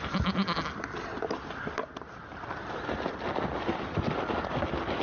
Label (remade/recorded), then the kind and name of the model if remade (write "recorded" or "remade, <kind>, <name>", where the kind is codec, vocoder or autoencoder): recorded